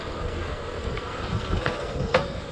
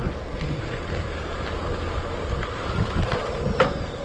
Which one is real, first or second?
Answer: second